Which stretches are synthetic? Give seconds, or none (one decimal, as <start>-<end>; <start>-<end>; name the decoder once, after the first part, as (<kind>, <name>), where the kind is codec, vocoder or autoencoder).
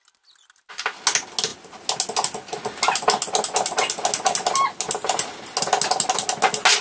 none